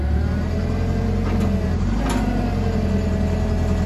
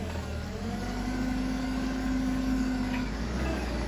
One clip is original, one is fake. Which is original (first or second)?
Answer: first